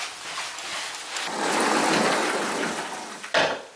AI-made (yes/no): no